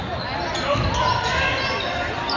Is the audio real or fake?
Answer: real